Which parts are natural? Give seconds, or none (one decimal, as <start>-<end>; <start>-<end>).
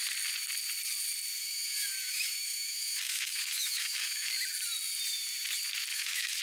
0.0-1.4; 4.3-5.9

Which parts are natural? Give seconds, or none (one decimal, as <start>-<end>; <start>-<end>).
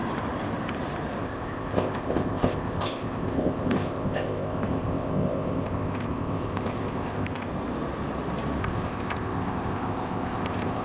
0.0-1.2; 7.5-8.6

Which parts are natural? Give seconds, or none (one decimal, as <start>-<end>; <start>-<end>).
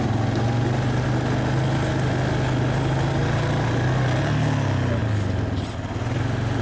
0.0-6.6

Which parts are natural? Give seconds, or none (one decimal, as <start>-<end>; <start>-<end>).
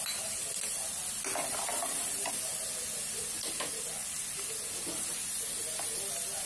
0.0-6.5